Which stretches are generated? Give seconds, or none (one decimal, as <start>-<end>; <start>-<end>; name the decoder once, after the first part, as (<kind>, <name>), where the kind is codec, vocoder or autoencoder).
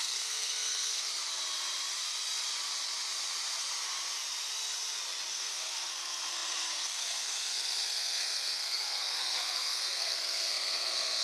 0.0-1.1 (codec, SNAC); 5.3-11.2